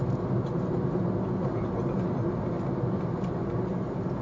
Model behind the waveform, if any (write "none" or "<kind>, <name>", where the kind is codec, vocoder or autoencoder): none